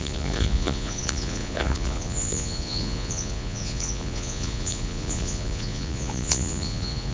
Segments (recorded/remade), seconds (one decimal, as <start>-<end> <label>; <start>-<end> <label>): 0.0-7.1 remade